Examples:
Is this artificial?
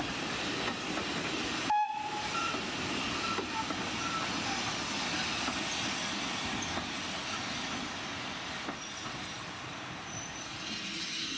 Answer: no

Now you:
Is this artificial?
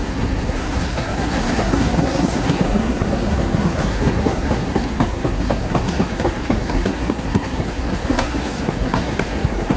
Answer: yes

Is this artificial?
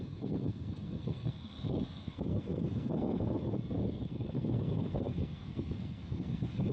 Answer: yes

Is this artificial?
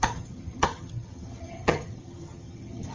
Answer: yes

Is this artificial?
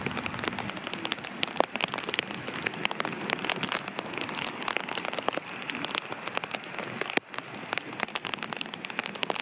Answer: no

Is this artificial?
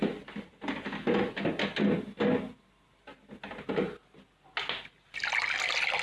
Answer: no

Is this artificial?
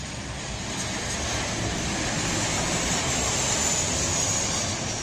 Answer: no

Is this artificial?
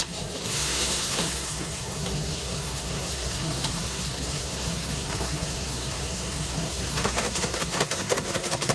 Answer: yes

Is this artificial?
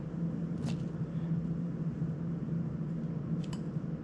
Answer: no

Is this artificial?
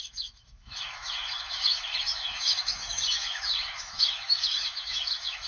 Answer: yes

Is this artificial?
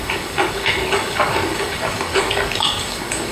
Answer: yes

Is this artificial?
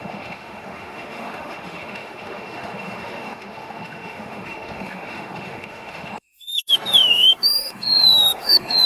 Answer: yes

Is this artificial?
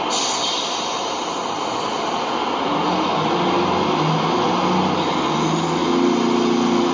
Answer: no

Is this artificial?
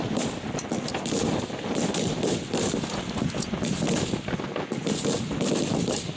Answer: no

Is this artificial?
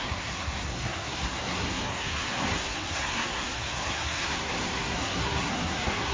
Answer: yes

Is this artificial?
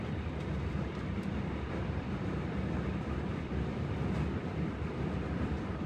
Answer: yes